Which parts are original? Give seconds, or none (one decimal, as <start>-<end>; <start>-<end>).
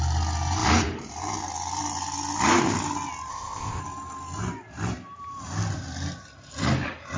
0.0-3.3; 3.8-7.2